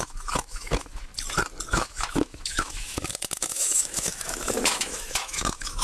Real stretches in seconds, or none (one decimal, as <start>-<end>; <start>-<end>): 1.1-1.7